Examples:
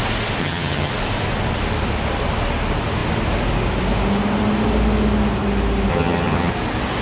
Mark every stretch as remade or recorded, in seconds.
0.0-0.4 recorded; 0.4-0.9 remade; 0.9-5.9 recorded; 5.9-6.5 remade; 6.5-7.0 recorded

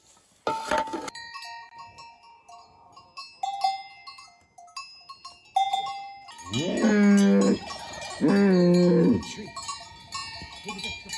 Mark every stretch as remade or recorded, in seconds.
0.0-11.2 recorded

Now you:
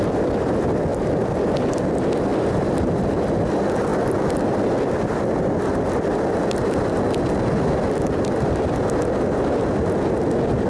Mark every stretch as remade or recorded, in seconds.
0.0-0.9 recorded; 0.9-1.9 remade; 1.9-2.3 recorded; 2.3-3.1 remade; 3.1-10.7 recorded

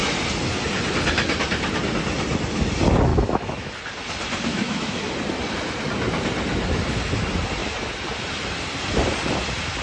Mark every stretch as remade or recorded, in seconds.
0.0-3.1 recorded; 3.1-3.7 remade; 3.7-4.5 recorded; 4.5-5.1 remade; 5.1-9.8 recorded

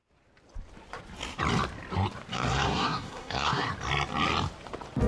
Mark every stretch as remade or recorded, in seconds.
0.0-2.3 recorded; 2.3-3.7 remade; 3.7-5.1 recorded